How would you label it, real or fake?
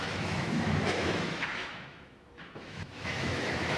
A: fake